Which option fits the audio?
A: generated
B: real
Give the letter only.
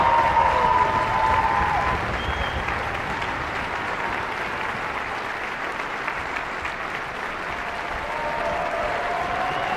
B